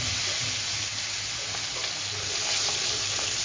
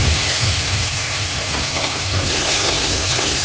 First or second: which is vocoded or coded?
second